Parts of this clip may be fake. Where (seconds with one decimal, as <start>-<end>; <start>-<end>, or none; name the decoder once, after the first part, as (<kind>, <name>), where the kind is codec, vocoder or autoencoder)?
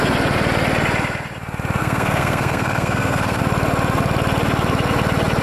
1.8-3.4 (codec, SNAC)